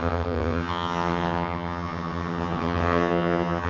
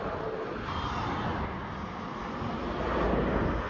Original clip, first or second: second